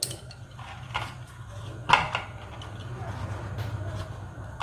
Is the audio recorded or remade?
recorded